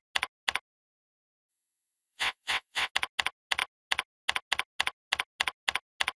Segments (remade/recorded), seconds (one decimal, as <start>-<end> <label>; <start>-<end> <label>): 0.0-1.5 recorded; 1.5-2.9 remade; 2.9-6.2 recorded